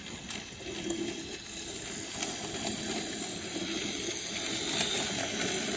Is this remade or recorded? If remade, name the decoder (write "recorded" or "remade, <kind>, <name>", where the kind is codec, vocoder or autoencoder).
recorded